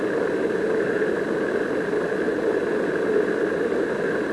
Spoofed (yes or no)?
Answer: no